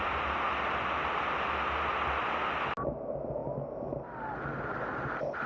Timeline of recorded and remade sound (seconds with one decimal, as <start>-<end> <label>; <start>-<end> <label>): 0.0-5.5 recorded